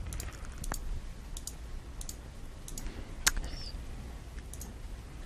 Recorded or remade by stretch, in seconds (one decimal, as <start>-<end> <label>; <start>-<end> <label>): 0.0-5.3 recorded